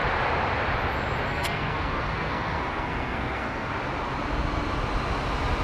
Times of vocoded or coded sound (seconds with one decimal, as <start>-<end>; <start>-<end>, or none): 1.3-3.7